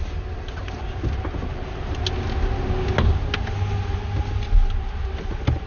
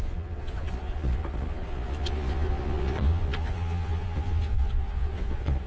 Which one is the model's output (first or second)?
second